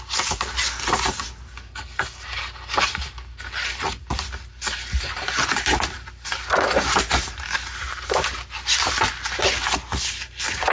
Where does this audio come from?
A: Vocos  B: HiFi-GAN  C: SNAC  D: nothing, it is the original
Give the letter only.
D